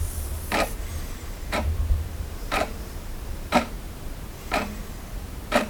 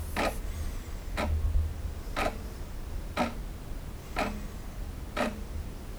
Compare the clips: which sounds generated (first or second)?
first